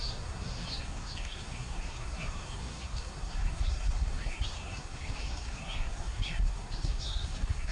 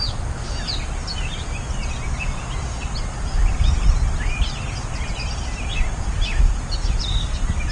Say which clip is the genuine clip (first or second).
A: second